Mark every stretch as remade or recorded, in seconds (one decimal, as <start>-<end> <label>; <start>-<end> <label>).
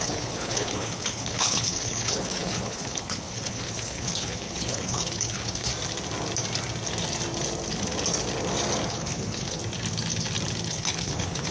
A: 0.0-5.7 remade; 5.7-8.9 recorded; 8.9-9.6 remade; 9.6-10.7 recorded; 10.7-11.5 remade